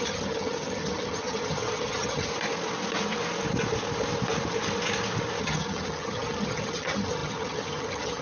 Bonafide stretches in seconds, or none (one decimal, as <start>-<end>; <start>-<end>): 2.3-5.4